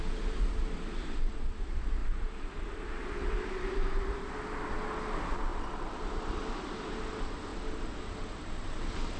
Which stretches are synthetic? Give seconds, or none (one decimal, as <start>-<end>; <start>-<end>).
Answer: 2.0-4.2; 5.5-6.4; 7.5-8.0